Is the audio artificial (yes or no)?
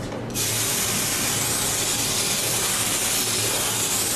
no